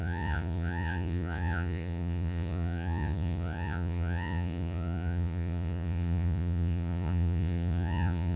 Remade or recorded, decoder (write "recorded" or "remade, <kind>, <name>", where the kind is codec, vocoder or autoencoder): remade, vocoder, Vocos